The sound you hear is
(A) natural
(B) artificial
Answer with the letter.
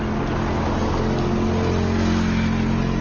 A